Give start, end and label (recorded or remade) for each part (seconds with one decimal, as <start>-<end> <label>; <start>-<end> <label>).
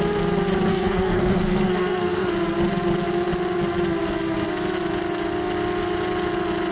0.0-0.7 recorded; 0.7-2.3 remade; 2.3-6.7 recorded